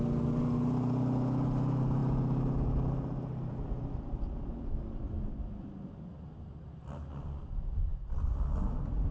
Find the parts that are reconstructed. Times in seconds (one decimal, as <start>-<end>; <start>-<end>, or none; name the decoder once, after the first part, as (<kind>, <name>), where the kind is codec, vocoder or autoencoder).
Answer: none